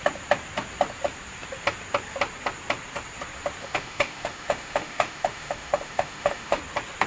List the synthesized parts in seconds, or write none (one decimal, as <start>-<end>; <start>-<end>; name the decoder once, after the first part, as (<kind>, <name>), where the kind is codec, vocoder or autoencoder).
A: 3.6-6.6 (autoencoder, DAC-VAE)